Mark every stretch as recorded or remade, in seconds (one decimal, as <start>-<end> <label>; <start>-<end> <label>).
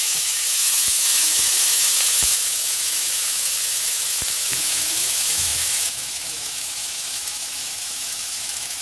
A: 0.0-8.8 remade